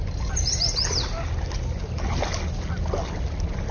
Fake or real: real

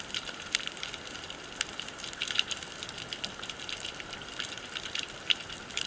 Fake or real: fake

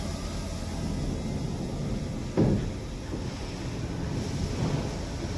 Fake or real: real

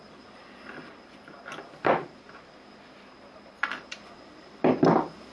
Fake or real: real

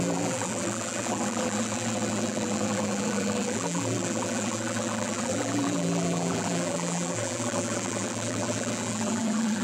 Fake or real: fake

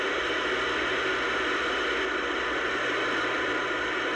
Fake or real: real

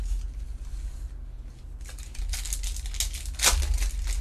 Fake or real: real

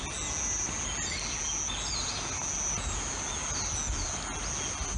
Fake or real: real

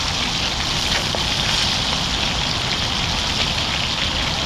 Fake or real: real